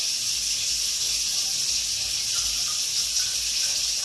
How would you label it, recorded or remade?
recorded